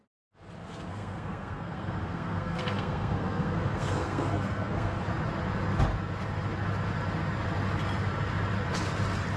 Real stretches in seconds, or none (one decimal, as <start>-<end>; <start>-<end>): 0.0-0.9; 5.0-9.4